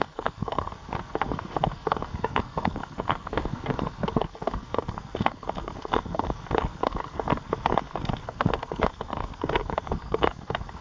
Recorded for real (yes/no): no